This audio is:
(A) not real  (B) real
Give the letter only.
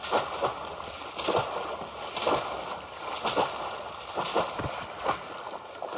B